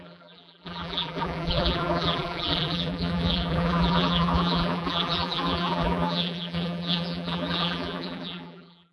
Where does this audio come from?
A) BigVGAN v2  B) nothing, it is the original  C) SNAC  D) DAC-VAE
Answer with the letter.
A